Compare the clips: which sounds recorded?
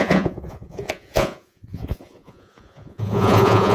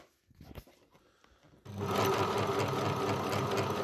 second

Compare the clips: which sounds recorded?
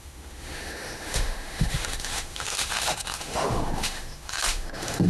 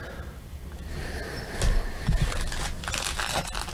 second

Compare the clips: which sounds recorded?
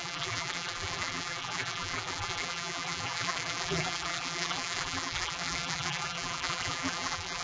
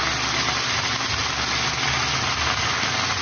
second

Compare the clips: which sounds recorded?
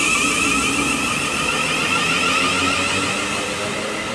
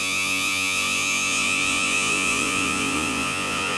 first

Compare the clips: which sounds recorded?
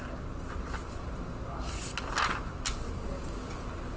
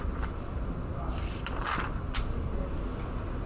first